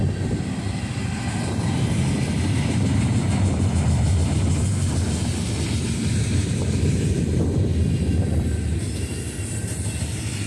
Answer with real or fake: real